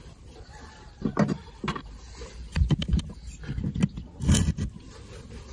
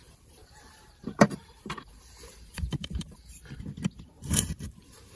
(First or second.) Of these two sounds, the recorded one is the first